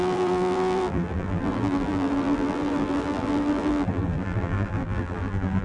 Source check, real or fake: fake